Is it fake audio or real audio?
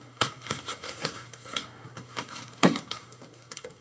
fake